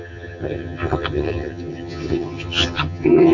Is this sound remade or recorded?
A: remade